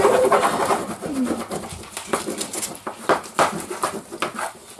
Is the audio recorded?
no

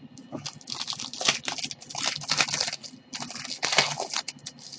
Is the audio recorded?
yes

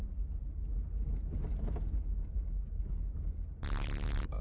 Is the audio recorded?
yes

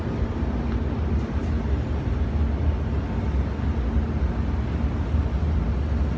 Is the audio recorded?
yes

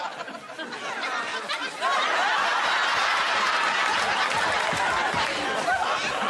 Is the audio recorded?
yes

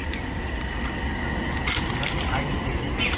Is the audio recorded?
yes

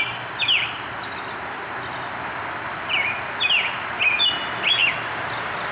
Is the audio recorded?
yes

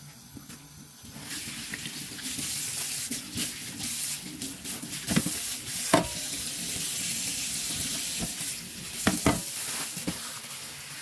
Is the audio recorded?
yes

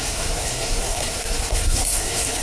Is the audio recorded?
no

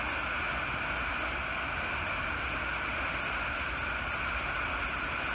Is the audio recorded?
yes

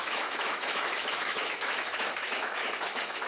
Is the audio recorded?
no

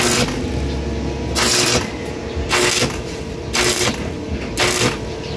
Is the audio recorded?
yes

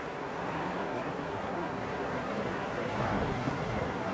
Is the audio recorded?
no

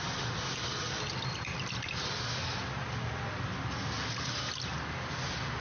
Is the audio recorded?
yes